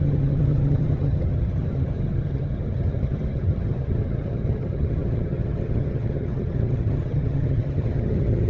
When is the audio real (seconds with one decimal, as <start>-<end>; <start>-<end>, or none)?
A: none